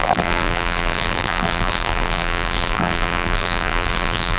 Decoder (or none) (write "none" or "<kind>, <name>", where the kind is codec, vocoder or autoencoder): vocoder, BigVGAN v2